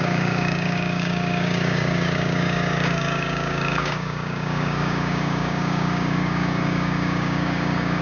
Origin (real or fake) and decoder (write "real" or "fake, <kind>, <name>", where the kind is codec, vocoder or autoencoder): fake, codec, DAC